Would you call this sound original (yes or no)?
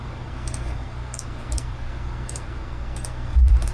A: no